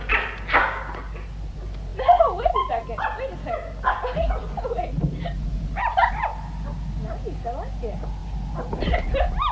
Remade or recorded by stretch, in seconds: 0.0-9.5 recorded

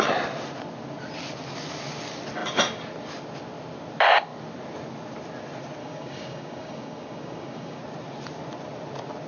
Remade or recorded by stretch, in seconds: 0.0-5.8 recorded; 5.8-7.8 remade; 7.8-9.3 recorded